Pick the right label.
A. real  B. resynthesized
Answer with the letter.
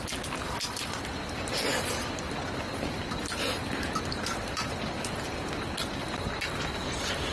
A